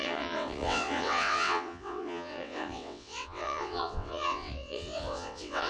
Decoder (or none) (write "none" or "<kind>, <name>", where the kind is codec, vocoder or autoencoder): vocoder, WaveNeXt